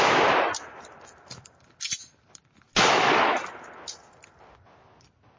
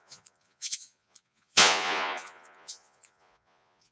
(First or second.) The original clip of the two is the first